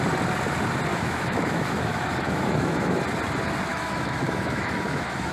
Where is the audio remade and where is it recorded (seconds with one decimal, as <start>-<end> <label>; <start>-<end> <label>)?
0.0-0.9 recorded; 0.9-3.0 remade; 3.0-3.7 recorded; 3.7-5.3 remade